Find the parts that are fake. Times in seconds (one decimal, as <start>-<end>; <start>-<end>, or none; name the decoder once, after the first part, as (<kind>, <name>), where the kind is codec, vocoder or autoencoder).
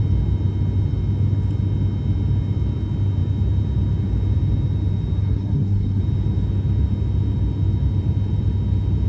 5.2-6.0 (codec, SNAC)